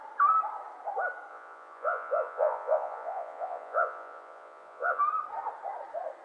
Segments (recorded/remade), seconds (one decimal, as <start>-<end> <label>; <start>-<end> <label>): 0.0-1.3 recorded; 1.3-5.0 remade; 5.0-6.2 recorded